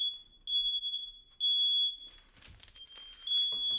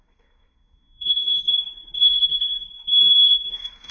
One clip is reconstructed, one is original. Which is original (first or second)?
first